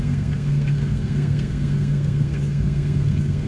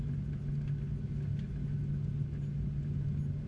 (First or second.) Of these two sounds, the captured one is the second